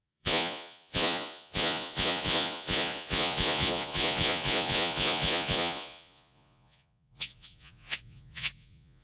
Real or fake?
fake